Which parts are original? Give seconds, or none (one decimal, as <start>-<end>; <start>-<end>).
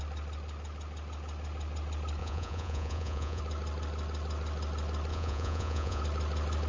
0.0-2.2; 3.4-5.1; 6.0-6.7